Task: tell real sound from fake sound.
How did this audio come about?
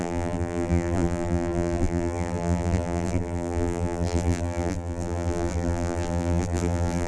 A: fake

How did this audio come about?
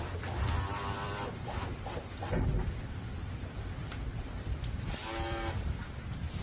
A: fake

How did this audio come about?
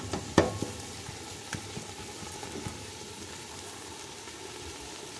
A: real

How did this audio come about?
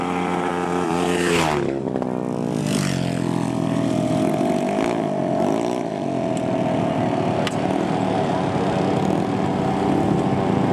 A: real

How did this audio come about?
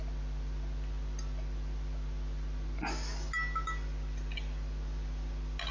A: real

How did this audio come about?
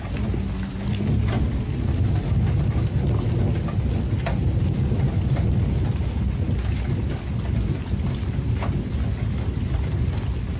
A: real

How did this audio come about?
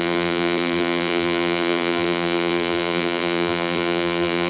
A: fake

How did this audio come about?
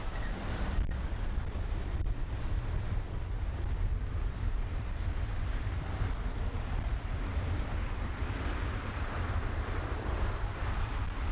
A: fake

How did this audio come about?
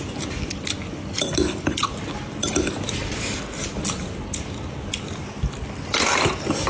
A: real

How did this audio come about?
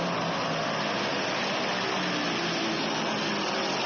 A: real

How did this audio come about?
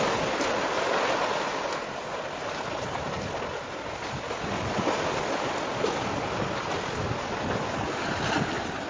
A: real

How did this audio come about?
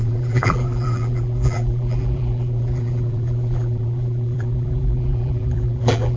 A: fake